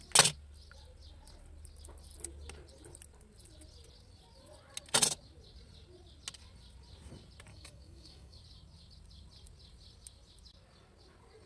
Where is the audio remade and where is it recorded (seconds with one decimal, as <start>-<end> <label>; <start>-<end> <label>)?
0.0-7.5 recorded; 7.5-8.4 remade; 8.4-11.5 recorded